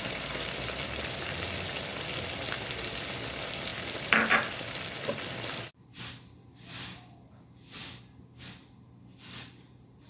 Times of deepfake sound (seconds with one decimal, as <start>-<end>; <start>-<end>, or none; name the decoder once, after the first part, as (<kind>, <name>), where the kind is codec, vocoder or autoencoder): none